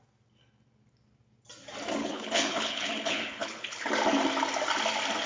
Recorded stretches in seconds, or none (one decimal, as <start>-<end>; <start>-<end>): 0.0-2.0; 3.9-5.3